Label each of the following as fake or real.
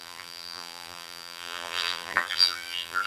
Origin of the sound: fake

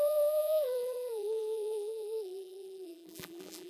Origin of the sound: fake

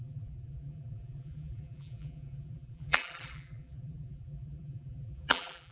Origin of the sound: fake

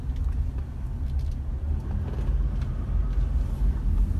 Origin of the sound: real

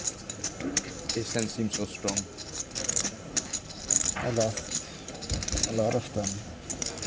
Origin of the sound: fake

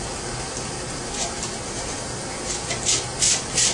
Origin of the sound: real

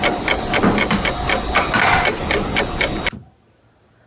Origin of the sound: real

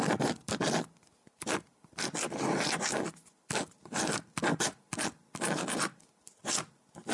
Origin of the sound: real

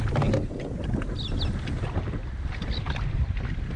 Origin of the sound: real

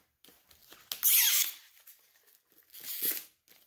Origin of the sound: real